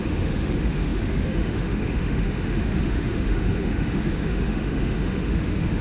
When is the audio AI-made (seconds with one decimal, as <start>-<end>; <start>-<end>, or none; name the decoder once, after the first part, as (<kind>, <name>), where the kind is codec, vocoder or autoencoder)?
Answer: 0.0-5.8 (autoencoder, DAC-VAE)